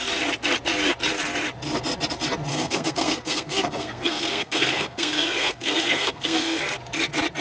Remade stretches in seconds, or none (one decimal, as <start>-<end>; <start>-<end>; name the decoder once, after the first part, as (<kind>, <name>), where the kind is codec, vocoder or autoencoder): 2.5-6.6 (codec, SNAC)